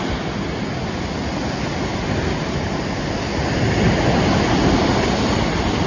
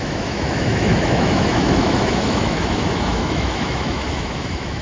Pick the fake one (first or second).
second